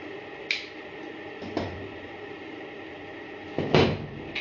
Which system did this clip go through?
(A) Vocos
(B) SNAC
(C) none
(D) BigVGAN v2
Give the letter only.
C